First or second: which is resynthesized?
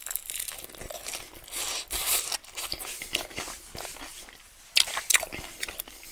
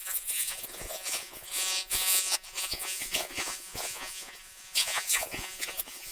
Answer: second